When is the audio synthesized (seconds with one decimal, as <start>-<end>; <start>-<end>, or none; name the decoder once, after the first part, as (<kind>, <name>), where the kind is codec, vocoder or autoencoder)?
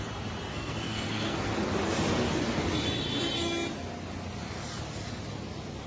0.5-1.5 (codec, SNAC)